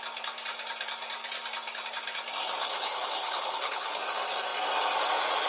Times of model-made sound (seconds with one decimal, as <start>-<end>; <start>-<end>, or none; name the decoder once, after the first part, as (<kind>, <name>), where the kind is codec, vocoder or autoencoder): 2.6-4.0 (codec, HILCodec)